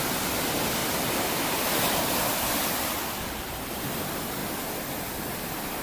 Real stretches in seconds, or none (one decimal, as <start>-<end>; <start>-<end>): 0.0-4.4